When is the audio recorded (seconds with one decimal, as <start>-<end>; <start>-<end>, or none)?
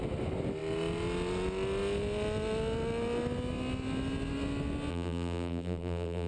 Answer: 0.0-4.9